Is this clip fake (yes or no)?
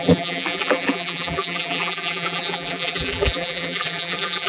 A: yes